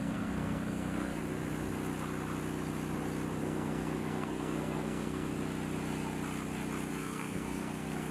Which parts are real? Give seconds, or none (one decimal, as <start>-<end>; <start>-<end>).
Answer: 1.2-3.4; 5.3-6.9